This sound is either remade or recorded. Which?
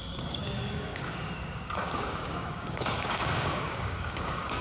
remade